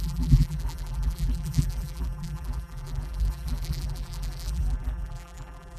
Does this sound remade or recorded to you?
remade